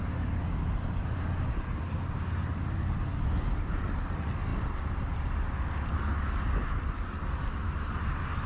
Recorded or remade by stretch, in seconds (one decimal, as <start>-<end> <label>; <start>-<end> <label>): 0.0-8.5 recorded